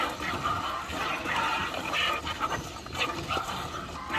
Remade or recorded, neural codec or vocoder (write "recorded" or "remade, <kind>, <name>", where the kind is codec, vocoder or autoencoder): recorded